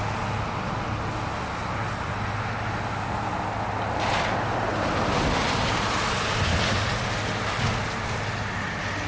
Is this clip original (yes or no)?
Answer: yes